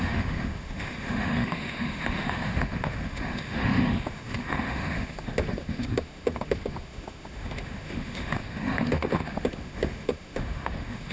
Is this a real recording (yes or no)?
no